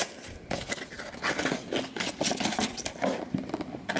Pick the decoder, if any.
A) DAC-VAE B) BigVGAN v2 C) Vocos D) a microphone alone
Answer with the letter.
D